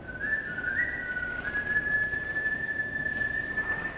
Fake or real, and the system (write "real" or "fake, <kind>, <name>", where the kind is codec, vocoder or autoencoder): real